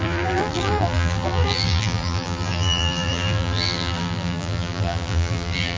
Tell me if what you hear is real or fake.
fake